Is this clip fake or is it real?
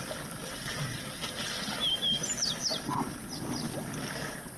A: real